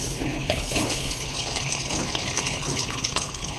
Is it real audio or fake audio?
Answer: fake